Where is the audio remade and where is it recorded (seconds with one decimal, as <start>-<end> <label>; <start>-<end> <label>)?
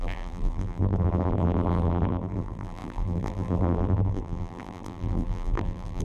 0.0-6.0 remade